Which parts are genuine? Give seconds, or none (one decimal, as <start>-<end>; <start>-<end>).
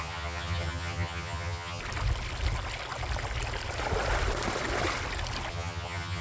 1.8-5.5